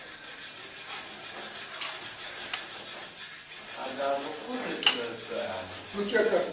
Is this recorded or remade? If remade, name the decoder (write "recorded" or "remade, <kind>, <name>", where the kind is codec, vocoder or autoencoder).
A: recorded